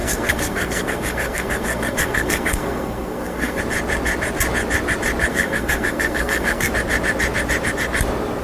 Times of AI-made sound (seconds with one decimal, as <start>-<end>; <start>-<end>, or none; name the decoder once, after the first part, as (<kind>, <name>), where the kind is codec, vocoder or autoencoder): 0.0-3.6 (codec, SNAC); 5.3-6.7